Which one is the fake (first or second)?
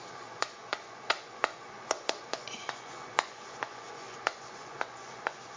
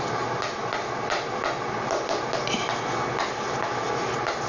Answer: first